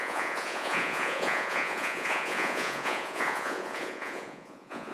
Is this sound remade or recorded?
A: remade